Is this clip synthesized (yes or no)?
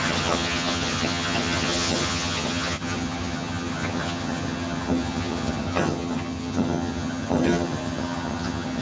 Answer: yes